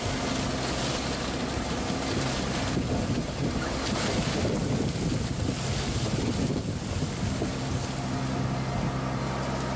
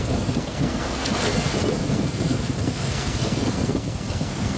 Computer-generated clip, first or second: second